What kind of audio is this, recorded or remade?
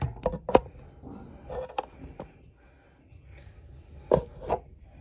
recorded